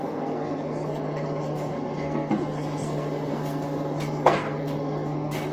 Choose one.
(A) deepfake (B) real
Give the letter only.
A